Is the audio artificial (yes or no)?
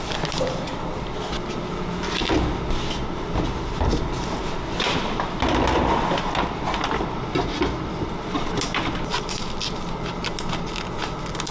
no